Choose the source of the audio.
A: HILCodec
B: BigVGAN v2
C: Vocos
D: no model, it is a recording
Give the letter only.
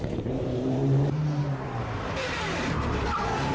B